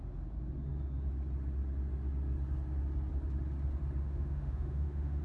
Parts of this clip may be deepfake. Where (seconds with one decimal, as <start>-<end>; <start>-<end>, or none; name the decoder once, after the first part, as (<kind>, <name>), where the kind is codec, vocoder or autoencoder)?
4.0-5.2 (autoencoder, DAC-VAE)